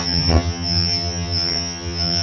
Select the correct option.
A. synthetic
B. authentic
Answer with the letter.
A